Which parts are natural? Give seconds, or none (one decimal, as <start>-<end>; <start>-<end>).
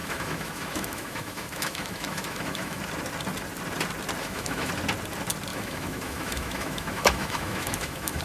2.8-4.2; 4.7-5.5